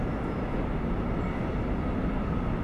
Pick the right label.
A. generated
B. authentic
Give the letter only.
B